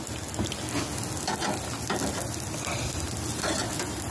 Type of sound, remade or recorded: recorded